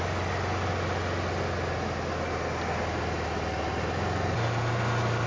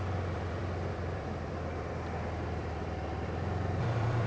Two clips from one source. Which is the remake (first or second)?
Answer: second